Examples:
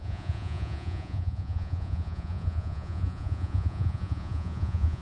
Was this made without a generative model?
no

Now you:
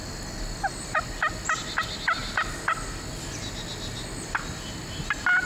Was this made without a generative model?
yes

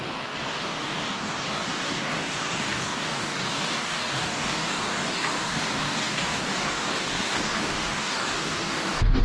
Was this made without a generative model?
no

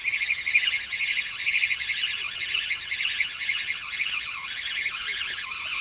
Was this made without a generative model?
yes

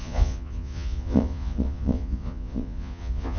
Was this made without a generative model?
no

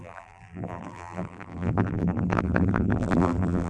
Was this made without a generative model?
no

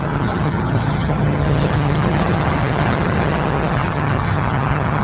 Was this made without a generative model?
no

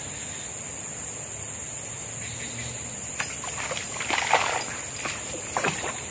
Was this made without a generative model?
yes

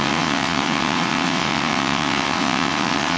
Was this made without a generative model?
no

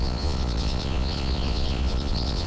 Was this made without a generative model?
no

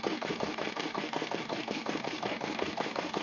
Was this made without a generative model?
no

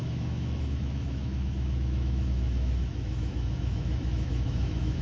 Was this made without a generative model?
no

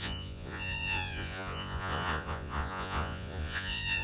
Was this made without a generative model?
no